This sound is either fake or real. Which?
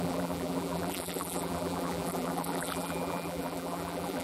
fake